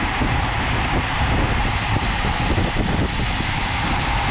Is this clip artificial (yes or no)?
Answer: no